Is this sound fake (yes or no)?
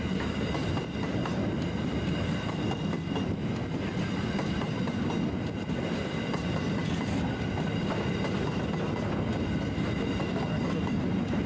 no